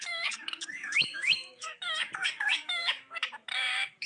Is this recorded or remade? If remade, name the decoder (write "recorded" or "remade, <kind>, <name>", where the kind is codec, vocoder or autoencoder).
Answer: remade, codec, DAC